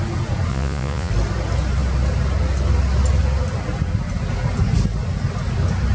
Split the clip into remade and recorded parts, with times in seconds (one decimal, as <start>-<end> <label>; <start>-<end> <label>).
0.0-0.5 recorded; 0.5-1.1 remade; 1.1-5.9 recorded